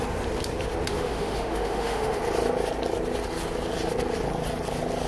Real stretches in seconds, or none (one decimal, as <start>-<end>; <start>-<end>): 0.0-0.9; 2.2-5.1